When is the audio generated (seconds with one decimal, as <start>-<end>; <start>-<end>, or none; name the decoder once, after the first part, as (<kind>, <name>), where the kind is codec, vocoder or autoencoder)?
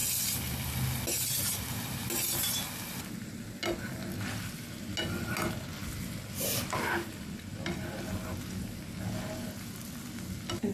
none